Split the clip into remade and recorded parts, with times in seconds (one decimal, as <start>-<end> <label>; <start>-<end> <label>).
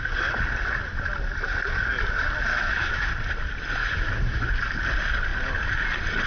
0.0-2.5 recorded; 2.5-3.1 remade; 3.1-3.8 recorded; 3.8-4.5 remade; 4.5-6.3 recorded